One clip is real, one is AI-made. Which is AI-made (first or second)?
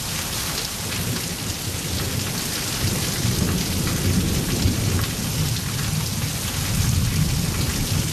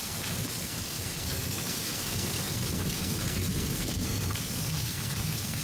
second